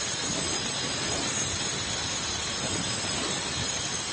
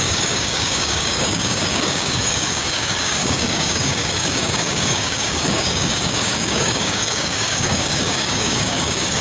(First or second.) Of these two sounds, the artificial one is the second